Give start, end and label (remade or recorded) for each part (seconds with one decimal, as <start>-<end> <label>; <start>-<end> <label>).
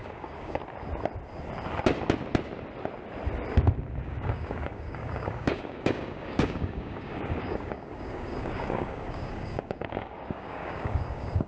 0.0-0.6 remade; 0.6-4.0 recorded; 4.0-11.5 remade